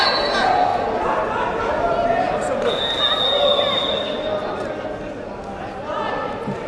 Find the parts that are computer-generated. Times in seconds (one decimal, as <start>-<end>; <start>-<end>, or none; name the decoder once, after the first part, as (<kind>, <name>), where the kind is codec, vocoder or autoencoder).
none